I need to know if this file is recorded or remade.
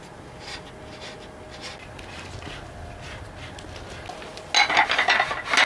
recorded